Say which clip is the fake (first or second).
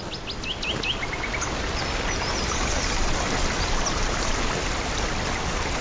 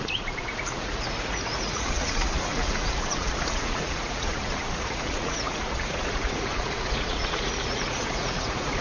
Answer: second